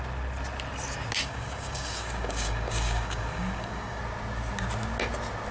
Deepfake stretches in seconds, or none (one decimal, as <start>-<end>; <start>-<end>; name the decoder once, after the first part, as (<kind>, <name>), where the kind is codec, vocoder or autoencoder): 1.2-4.0 (codec, DAC)